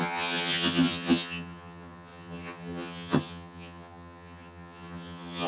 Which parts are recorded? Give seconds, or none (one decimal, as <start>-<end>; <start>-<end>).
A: none